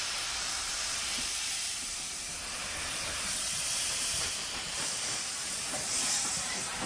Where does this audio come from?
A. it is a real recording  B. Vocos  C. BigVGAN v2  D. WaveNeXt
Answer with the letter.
C